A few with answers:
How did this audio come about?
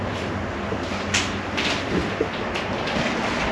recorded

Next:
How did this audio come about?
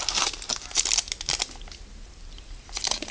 recorded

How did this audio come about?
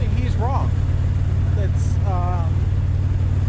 recorded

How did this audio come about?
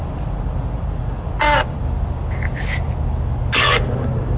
recorded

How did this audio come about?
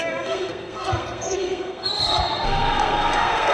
remade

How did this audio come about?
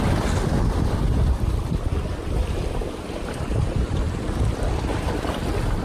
remade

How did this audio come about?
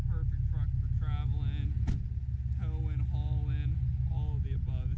recorded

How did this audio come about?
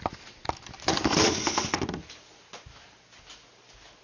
recorded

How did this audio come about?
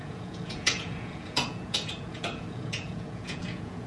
remade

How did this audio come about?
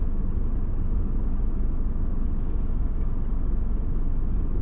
recorded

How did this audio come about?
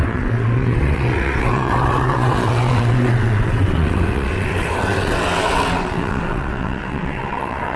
remade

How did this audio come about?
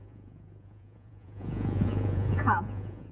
remade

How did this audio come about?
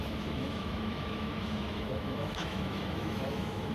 remade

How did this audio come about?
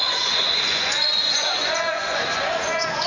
remade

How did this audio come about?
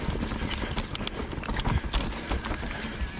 recorded